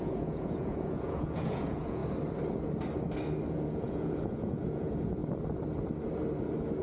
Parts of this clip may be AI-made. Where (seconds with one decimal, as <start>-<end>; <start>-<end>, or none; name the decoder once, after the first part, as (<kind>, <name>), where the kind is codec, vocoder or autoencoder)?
0.0-2.0 (vocoder, Vocos); 3.5-5.2